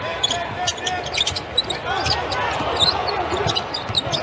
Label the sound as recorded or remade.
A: recorded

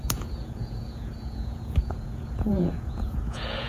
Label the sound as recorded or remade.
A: remade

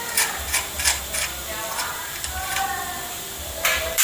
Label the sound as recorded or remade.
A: remade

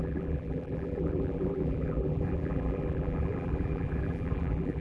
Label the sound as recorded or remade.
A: remade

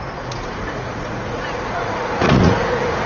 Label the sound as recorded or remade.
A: remade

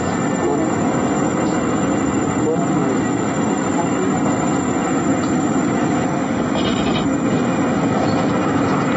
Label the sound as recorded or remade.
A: recorded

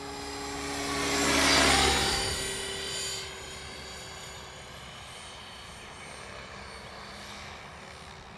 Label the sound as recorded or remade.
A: recorded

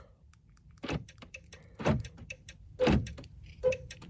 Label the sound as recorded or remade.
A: remade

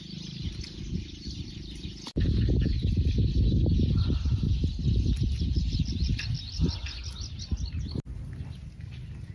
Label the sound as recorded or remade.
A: recorded